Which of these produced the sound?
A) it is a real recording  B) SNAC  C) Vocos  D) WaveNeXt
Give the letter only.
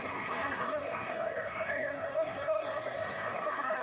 B